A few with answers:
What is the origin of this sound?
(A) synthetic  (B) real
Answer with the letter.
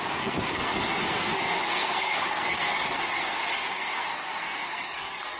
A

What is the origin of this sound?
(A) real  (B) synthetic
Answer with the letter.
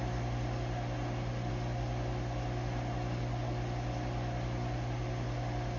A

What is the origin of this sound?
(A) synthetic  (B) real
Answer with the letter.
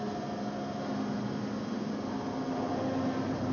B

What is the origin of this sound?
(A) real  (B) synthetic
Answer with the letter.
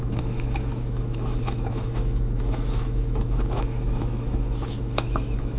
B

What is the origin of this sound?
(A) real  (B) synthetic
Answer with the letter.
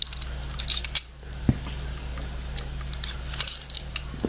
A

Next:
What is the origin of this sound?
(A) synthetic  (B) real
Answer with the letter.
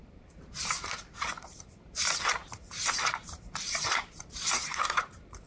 A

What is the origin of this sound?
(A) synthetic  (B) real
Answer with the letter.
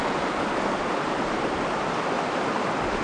B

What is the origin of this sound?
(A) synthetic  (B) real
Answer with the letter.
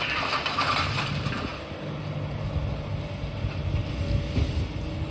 B